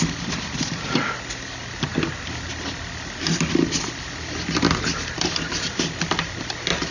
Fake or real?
real